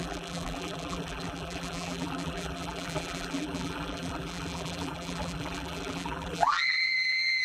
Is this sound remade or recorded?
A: remade